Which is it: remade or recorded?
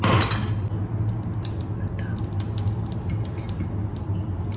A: recorded